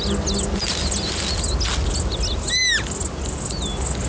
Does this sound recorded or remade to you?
recorded